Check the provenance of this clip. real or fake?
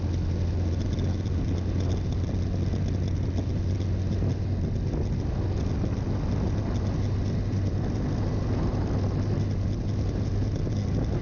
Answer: real